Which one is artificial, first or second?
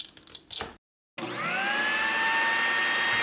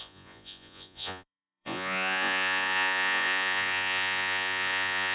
second